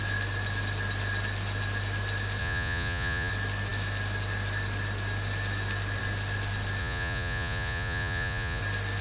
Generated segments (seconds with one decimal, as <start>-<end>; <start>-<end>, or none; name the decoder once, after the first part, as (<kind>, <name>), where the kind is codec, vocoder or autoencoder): 2.4-3.3 (vocoder, Vocos); 6.8-8.6